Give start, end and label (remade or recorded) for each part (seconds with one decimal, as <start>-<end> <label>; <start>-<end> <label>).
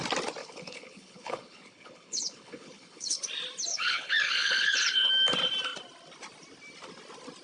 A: 0.0-0.4 recorded; 0.4-3.2 remade; 3.2-3.7 recorded; 3.7-5.1 remade; 5.1-7.4 recorded